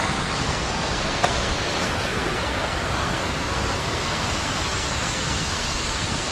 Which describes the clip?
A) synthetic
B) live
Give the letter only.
A